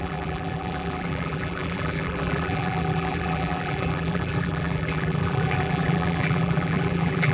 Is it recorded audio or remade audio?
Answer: remade